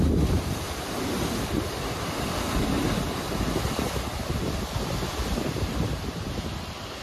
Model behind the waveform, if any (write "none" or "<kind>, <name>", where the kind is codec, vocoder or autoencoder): vocoder, BigVGAN v2